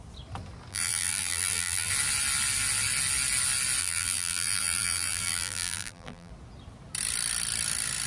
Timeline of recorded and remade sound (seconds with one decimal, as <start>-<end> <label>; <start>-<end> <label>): 0.0-0.7 recorded; 0.7-1.9 remade; 1.9-3.8 recorded; 3.8-6.3 remade; 6.3-8.1 recorded